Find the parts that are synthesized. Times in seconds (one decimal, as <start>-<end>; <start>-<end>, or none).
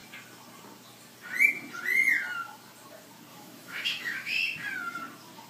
3.3-4.4